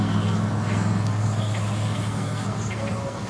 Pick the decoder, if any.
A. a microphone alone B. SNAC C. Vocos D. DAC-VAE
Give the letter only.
B